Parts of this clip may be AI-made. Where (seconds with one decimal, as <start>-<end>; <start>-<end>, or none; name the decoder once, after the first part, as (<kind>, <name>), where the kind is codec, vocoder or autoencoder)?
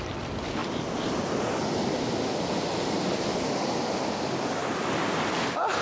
none